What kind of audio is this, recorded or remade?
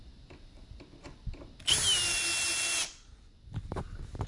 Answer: recorded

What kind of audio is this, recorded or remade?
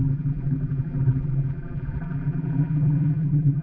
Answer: remade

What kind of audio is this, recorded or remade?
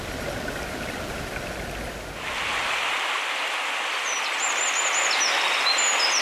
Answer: recorded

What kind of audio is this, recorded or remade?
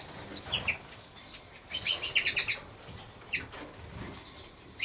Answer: recorded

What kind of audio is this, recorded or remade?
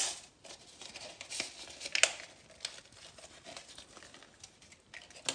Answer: recorded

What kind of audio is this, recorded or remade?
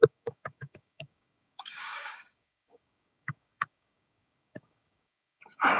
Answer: remade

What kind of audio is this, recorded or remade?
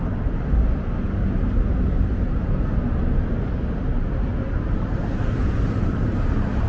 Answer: recorded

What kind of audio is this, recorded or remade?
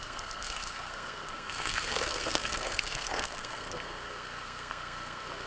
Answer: remade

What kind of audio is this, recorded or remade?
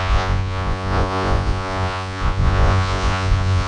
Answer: remade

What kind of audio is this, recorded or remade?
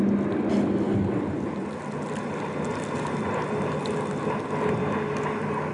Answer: recorded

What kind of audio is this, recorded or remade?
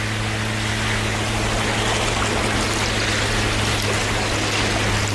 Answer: recorded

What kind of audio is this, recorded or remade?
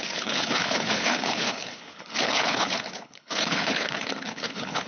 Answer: remade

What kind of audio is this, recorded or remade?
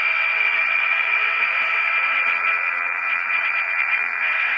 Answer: remade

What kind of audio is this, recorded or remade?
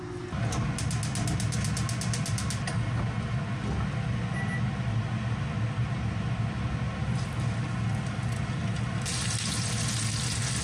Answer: recorded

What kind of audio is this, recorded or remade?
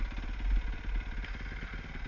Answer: recorded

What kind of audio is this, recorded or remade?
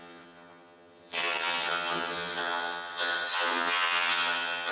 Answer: remade